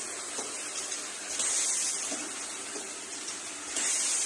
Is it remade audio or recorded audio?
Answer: recorded